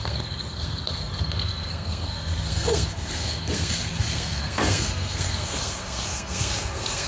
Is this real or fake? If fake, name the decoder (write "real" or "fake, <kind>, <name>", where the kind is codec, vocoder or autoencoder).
fake, codec, SNAC